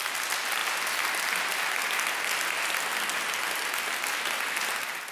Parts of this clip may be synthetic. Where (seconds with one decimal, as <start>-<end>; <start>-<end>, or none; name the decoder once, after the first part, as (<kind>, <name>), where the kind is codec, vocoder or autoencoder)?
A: none